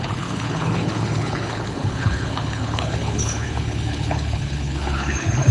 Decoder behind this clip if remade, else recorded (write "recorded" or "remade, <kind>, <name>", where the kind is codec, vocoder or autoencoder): remade, codec, HILCodec